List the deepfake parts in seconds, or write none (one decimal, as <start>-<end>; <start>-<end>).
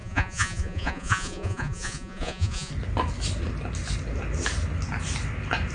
0.0-2.7